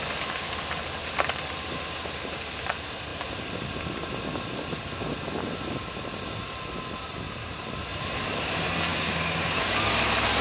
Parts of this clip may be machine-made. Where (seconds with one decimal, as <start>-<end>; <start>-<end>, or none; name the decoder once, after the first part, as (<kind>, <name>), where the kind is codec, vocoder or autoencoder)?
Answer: 8.9-9.9 (codec, DAC)

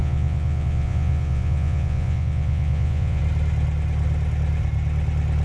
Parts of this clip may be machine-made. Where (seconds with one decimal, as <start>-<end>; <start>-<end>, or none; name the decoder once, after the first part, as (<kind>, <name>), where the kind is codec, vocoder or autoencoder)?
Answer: 0.0-3.2 (vocoder, Vocos)

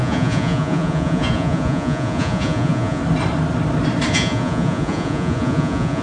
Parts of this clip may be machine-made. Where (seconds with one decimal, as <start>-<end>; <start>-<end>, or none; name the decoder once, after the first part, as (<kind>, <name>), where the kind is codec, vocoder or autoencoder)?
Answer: 0.0-3.0 (vocoder, Vocos); 4.1-6.0

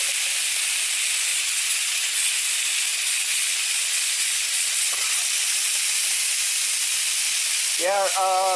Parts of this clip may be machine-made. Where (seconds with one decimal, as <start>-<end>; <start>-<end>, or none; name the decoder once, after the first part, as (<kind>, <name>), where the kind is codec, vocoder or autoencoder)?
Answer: 1.3-2.3 (vocoder, Vocos); 2.9-5.2

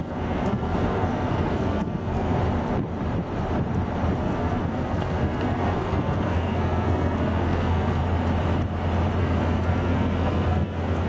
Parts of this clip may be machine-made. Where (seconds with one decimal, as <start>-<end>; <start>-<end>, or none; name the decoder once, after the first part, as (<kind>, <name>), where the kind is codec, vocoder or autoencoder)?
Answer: 0.0-2.3 (codec, SNAC); 4.2-8.0; 9.2-11.1

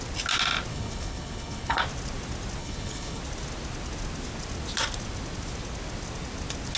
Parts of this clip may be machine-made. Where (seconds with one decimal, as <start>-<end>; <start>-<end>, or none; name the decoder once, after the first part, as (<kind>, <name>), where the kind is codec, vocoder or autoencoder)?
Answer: 0.7-1.8 (codec, HILCodec); 2.6-3.2

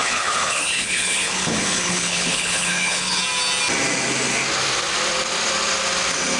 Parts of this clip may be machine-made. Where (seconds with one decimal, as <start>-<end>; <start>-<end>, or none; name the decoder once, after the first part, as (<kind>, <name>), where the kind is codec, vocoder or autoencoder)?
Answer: 0.0-3.2 (codec, HILCodec)

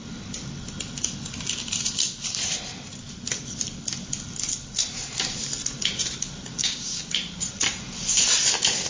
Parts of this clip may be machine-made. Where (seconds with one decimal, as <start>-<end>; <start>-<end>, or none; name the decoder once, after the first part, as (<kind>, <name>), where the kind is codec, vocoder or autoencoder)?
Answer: 6.6-7.1 (codec, DAC)